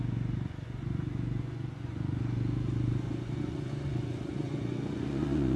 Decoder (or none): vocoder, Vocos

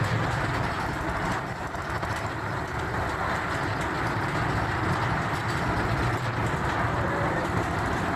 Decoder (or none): none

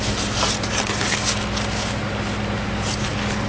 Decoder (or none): none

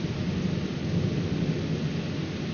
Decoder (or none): none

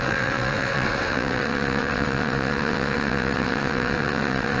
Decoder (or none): vocoder, WaveNeXt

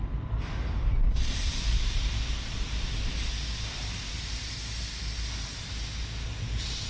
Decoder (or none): none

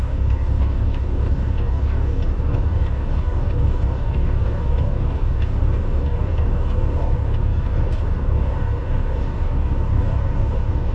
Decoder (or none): codec, DAC